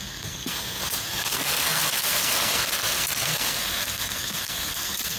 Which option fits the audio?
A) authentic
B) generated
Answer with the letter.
B